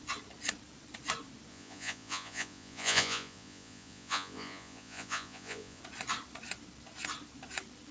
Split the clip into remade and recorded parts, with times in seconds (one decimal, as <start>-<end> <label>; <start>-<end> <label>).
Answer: 0.0-1.5 recorded; 1.5-5.8 remade; 5.8-7.9 recorded